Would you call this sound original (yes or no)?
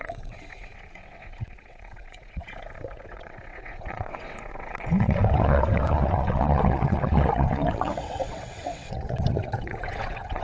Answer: no